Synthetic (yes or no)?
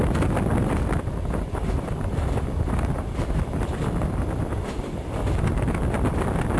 yes